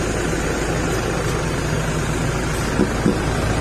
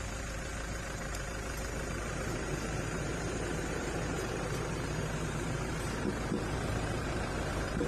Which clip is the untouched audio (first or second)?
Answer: first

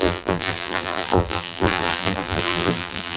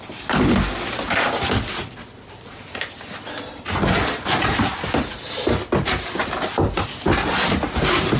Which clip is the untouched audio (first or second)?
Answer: second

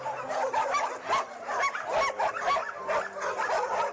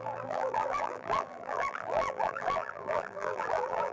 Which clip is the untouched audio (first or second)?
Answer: first